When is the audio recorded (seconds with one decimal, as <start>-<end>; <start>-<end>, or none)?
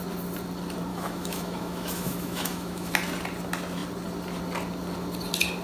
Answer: 0.0-0.9; 2.9-5.6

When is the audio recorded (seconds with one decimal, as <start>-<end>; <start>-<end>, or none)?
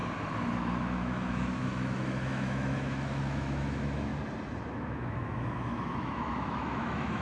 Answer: 0.0-0.8; 4.1-4.7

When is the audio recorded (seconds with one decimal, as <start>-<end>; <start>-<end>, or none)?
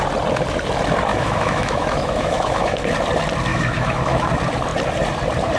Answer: 0.0-1.1; 2.8-3.5; 4.3-5.6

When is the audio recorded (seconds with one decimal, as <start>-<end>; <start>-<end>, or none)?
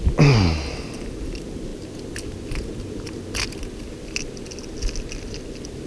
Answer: 0.0-5.9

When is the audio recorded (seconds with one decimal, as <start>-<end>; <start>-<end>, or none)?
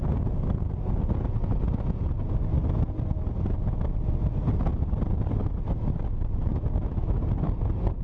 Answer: 0.0-6.5; 7.2-8.0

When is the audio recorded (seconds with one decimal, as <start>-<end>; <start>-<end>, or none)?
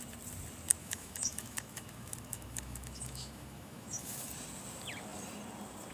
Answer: 0.0-0.8; 4.3-5.9